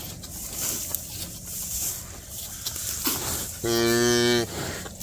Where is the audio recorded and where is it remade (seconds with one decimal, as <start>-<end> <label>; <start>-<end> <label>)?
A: 0.0-0.9 recorded; 0.9-2.2 remade; 2.2-5.0 recorded